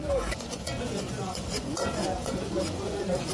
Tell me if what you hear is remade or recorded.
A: remade